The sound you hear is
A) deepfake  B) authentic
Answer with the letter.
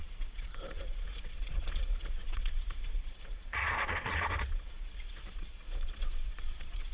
A